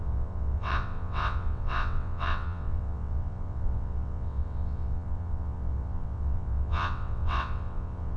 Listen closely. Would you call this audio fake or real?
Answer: fake